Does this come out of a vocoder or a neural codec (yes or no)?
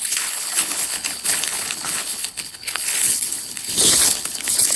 yes